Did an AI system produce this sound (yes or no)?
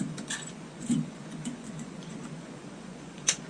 yes